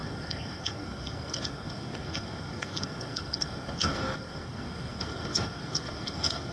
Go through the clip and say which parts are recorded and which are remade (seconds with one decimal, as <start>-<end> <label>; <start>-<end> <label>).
0.0-6.5 remade